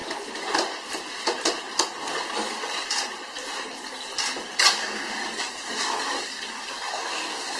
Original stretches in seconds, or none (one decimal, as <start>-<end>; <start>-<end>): 0.0-4.6